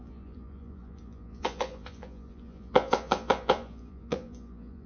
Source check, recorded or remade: remade